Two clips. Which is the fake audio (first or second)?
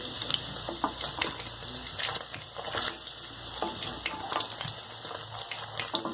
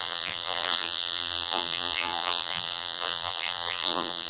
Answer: second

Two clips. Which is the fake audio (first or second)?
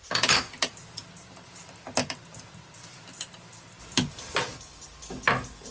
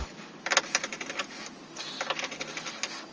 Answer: first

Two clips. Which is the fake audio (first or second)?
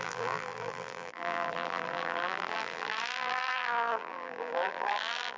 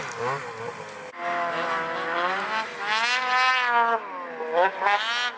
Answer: first